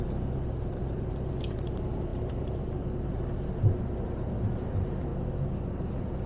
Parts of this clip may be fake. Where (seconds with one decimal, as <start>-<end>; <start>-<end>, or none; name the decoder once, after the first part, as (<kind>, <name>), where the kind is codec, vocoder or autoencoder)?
0.0-5.1 (vocoder, BigVGAN v2)